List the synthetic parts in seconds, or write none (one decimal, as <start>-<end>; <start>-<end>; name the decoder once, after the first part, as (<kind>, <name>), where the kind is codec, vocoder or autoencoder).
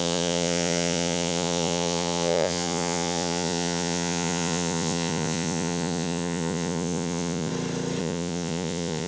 0.0-7.5 (vocoder, Vocos); 8.0-9.1